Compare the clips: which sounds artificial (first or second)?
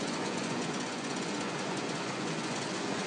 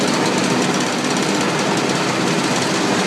first